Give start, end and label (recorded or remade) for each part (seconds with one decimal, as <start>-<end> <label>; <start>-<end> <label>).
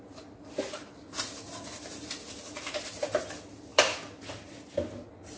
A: 0.0-5.4 recorded